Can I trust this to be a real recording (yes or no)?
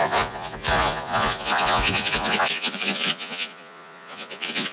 no